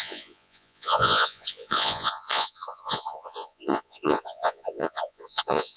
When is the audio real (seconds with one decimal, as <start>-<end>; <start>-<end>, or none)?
none